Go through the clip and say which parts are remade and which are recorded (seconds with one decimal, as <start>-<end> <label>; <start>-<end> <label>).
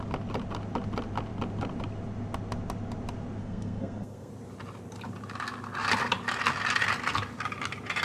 0.0-3.4 recorded; 3.4-4.3 remade; 4.3-8.0 recorded